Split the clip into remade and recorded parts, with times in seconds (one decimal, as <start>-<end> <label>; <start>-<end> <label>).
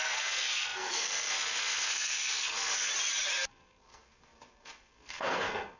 0.0-2.9 remade; 2.9-3.5 recorded; 3.5-5.8 remade